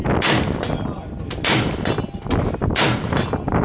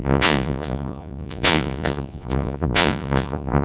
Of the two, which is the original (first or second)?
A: first